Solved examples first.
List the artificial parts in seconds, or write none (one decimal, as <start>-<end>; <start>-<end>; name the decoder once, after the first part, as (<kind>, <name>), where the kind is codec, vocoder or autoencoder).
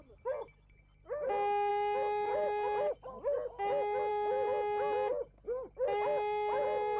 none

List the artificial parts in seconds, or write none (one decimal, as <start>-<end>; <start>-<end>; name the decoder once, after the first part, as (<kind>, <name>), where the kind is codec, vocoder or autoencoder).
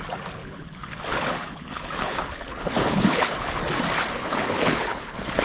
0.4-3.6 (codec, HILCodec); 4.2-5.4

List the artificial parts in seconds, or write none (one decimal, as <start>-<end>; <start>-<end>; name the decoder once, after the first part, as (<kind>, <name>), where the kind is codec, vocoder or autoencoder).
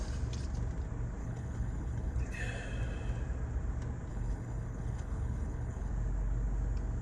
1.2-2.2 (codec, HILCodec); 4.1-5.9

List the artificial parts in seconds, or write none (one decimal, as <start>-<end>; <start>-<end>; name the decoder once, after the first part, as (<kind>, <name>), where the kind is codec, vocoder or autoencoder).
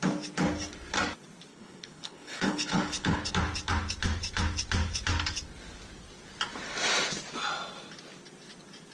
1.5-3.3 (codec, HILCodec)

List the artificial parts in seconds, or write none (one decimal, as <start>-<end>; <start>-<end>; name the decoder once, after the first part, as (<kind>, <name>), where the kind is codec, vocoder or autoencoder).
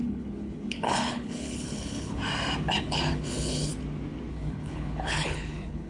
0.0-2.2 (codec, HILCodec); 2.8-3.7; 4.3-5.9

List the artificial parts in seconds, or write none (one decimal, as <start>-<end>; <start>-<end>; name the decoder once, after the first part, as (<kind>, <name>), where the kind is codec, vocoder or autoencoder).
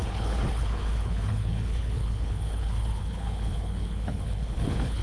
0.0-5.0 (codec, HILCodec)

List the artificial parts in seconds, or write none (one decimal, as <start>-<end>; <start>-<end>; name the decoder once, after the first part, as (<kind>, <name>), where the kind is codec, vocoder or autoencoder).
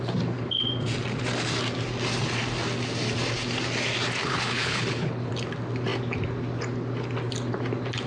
4.2-5.3 (codec, HILCodec)